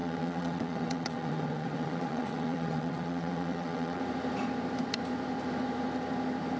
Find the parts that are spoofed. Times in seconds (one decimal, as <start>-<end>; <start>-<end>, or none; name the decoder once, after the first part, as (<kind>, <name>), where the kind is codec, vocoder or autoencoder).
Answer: 0.0-4.0 (vocoder, WaveNeXt)